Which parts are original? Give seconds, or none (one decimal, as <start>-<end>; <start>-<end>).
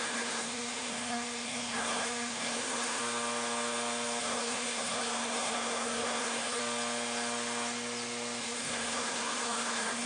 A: 3.0-4.2; 6.6-8.4